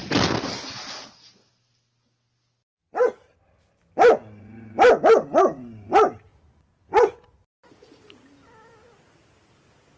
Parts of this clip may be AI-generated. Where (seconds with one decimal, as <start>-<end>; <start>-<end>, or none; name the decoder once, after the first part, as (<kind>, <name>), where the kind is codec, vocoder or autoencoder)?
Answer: none

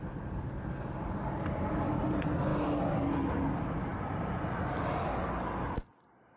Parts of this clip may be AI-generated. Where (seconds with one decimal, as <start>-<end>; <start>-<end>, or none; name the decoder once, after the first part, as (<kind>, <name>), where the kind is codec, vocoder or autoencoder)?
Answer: none

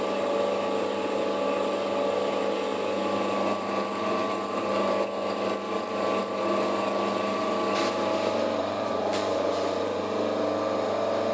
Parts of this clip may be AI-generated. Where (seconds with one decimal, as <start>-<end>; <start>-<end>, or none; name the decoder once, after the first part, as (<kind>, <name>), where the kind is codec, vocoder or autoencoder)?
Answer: 8.6-10.0 (vocoder, Vocos)

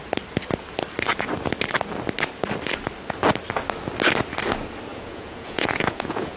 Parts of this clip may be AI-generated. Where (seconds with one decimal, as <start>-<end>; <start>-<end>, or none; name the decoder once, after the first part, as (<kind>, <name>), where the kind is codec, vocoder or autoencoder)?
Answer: 4.9-6.4 (vocoder, Vocos)

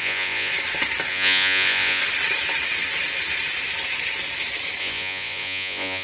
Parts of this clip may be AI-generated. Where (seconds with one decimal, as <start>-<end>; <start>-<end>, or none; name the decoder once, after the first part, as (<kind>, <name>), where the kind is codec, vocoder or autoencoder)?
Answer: 0.0-0.5 (vocoder, Vocos); 1.1-2.0; 4.8-6.0

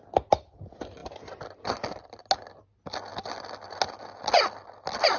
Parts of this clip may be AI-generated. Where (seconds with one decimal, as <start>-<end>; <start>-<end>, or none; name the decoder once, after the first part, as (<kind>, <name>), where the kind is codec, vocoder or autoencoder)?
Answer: none

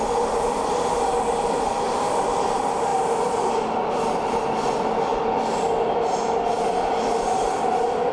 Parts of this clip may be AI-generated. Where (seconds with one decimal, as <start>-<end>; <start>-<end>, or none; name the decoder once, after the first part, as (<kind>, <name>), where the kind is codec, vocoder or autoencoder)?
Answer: none

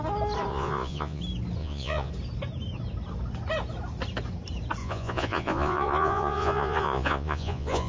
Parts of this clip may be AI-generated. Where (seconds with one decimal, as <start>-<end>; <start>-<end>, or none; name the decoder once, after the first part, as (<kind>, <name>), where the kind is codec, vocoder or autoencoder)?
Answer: 0.5-1.2 (vocoder, Vocos); 1.6-2.1; 4.8-7.9